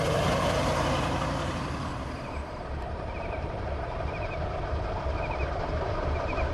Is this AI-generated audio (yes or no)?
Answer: yes